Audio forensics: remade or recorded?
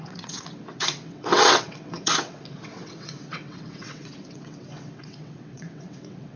remade